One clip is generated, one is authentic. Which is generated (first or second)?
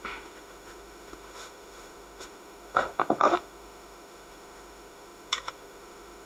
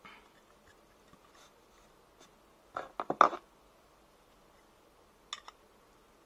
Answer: first